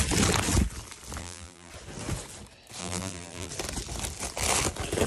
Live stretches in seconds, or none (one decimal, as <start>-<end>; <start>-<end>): 0.0-1.2; 1.7-2.8; 3.5-5.1